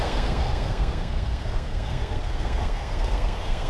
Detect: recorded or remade remade